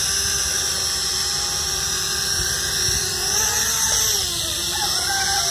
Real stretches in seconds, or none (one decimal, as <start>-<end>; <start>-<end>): 0.0-5.5

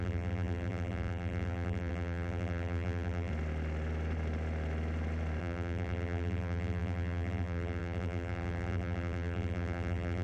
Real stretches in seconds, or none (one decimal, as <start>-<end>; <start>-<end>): 3.3-5.4

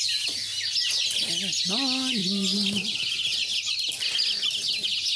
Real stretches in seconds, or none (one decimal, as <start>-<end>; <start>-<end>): 0.0-5.2

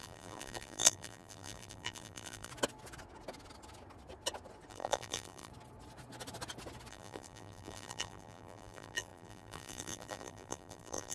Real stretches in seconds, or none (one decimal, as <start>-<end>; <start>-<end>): 2.5-4.7; 5.5-6.9

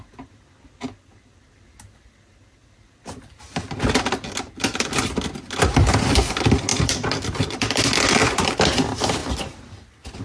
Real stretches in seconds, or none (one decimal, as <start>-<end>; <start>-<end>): 0.0-6.7; 8.6-9.2